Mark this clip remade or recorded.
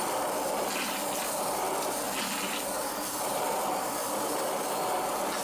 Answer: recorded